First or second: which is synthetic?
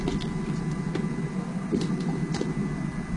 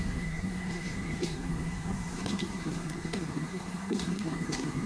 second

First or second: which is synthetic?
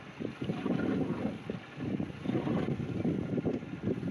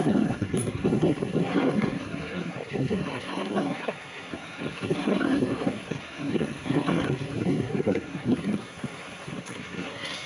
second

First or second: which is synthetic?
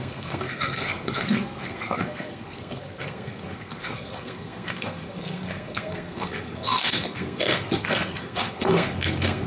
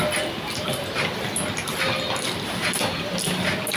first